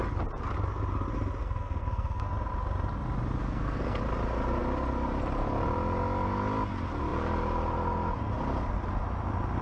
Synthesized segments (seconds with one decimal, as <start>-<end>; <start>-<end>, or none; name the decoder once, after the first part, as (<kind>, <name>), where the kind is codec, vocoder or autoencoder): 1.4-2.3 (codec, SNAC); 3.4-4.0